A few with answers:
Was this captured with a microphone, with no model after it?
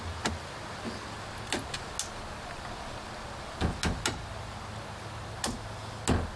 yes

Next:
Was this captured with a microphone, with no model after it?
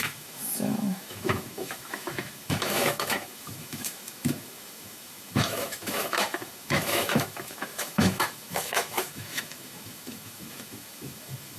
no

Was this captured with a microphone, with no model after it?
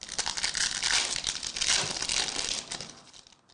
yes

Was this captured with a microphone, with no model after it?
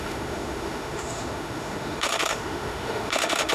no